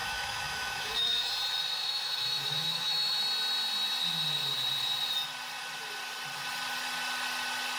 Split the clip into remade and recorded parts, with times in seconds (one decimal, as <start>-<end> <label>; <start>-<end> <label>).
0.0-1.3 remade; 1.3-1.8 recorded; 1.8-3.2 remade; 3.2-7.8 recorded